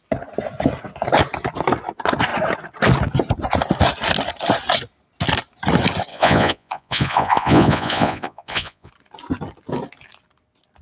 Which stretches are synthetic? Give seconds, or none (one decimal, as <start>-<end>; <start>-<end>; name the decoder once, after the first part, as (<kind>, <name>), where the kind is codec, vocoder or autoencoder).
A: 6.1-8.9 (vocoder, Vocos)